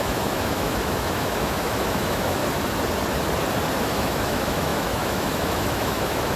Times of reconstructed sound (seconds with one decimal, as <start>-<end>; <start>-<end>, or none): 0.0-2.4; 3.8-6.4